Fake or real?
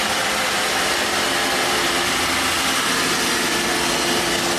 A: real